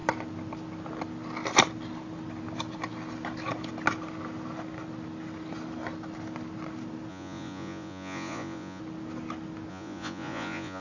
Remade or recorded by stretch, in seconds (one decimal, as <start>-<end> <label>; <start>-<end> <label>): 0.0-7.1 recorded; 7.1-8.8 remade; 8.8-9.7 recorded; 9.7-10.8 remade

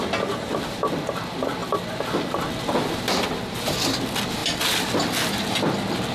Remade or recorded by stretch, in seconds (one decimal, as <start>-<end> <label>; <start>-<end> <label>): 0.0-6.1 recorded

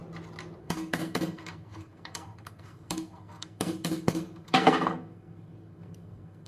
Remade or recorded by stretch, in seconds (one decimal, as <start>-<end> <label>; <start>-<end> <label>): 0.0-0.6 recorded; 0.6-6.5 remade

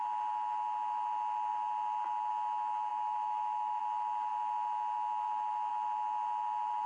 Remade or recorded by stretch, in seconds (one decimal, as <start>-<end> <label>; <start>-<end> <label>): 0.0-2.9 recorded; 2.9-3.8 remade; 3.8-6.9 recorded

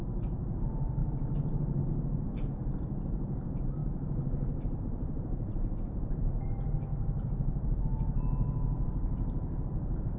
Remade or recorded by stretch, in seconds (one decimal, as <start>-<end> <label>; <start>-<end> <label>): 0.0-10.2 remade